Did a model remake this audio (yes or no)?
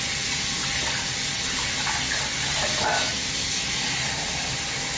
no